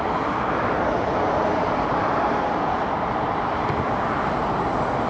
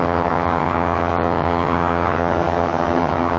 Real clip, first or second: first